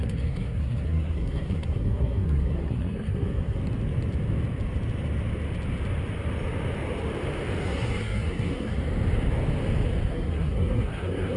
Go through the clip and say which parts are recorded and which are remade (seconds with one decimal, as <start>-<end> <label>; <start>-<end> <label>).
0.0-3.6 remade; 3.6-7.6 recorded; 7.6-8.8 remade; 8.8-10.1 recorded; 10.1-11.4 remade